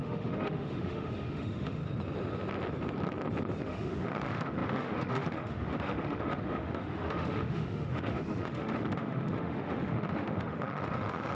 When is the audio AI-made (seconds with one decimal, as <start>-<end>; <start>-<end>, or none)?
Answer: 0.0-1.8; 3.6-11.3